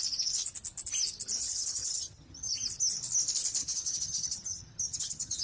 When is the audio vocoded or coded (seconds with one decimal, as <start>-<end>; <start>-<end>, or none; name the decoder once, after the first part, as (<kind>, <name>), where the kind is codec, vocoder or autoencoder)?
1.4-2.6 (vocoder, HiFi-GAN); 3.6-5.4